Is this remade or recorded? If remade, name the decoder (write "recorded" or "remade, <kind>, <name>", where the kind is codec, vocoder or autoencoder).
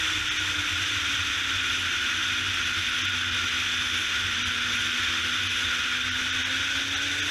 recorded